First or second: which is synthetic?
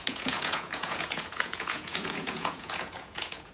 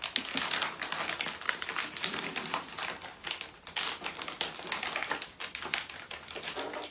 first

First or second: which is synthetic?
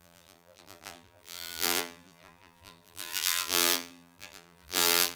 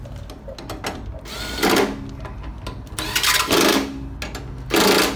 first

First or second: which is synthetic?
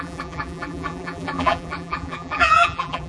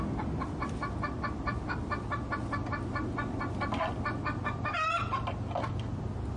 first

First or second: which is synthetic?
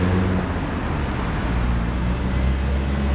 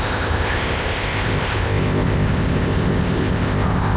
second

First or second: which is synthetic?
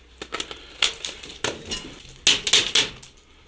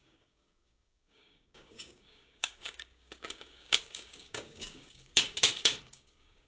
second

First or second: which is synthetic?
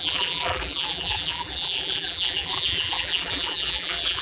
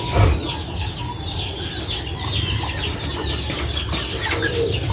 first